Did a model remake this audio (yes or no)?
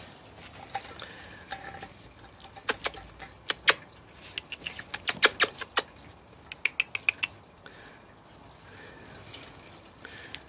no